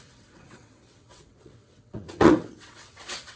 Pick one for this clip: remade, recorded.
remade